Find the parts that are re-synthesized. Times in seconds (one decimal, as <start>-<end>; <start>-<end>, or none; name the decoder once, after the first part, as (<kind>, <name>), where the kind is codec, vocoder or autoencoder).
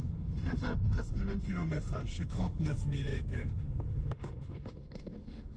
0.0-5.6 (autoencoder, DAC-VAE)